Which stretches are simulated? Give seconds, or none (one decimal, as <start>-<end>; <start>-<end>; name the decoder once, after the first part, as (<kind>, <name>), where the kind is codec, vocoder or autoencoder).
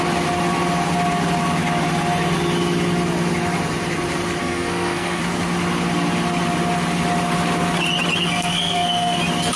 4.4-5.2 (codec, SNAC); 8.2-9.2